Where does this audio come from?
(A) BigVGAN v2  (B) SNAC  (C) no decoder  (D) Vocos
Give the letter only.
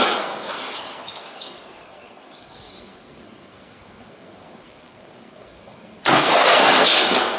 B